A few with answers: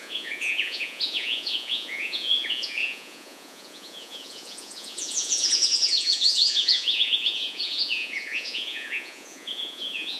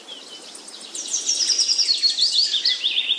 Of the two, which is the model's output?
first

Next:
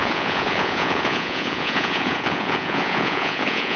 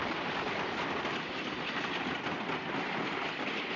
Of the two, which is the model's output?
first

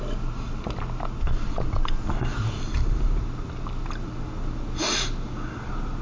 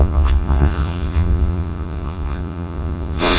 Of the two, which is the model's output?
second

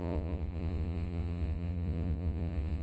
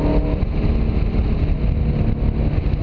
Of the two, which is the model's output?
first